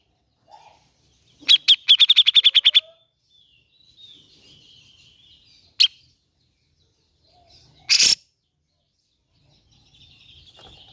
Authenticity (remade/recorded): recorded